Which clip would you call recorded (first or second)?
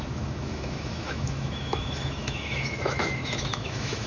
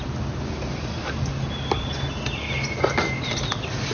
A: second